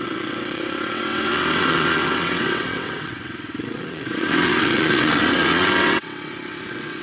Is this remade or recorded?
remade